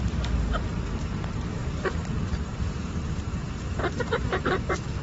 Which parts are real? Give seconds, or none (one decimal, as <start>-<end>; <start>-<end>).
none